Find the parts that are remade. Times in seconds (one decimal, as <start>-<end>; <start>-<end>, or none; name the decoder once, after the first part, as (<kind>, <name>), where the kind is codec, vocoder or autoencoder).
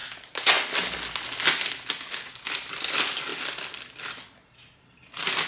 none